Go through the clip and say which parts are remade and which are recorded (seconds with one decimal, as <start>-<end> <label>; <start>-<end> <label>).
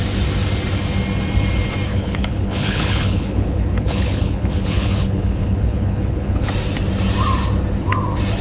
0.0-1.9 recorded; 1.9-6.5 remade; 6.5-8.4 recorded